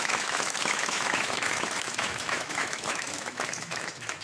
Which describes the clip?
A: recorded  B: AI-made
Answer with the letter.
B